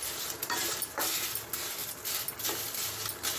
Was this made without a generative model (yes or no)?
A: yes